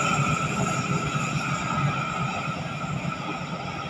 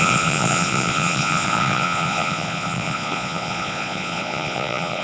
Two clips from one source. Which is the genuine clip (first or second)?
first